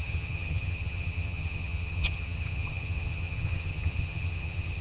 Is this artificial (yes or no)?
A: yes